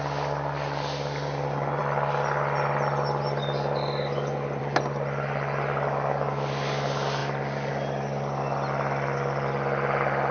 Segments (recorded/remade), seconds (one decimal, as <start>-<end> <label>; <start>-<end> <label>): 0.0-10.3 recorded